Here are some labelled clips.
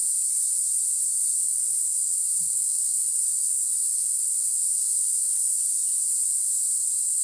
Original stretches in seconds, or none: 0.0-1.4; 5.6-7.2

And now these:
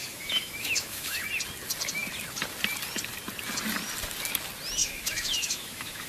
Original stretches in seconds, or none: 1.3-4.8